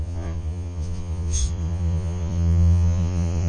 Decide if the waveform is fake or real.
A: fake